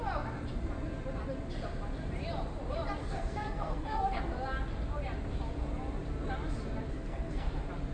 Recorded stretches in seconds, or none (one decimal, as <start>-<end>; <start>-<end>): 0.0-3.0; 4.2-6.9; 7.5-7.9